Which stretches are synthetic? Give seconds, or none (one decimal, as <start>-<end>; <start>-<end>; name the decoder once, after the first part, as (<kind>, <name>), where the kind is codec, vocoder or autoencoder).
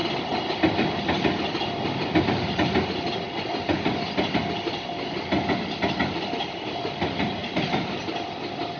none